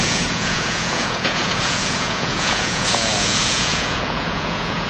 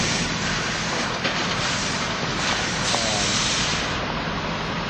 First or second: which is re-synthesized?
first